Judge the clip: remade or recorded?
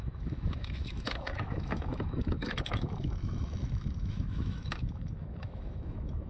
remade